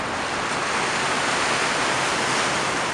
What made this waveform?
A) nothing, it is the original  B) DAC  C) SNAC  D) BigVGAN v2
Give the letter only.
A